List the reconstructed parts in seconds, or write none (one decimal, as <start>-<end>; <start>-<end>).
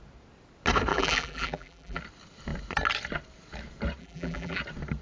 0.9-2.0; 4.0-4.6